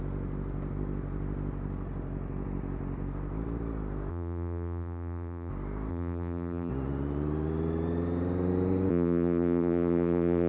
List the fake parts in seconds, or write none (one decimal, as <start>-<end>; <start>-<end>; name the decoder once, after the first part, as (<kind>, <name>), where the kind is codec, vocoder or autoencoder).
4.1-5.5 (vocoder, BigVGAN v2); 5.9-6.7; 8.9-10.5